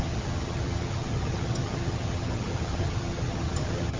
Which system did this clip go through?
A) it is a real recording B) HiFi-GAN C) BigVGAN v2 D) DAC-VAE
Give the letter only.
B